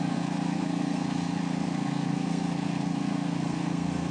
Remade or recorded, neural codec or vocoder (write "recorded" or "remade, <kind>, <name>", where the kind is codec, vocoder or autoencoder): remade, codec, SNAC